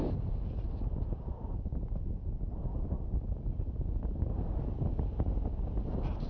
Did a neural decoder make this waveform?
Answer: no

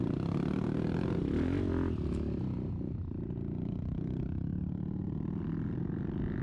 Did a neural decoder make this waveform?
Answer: no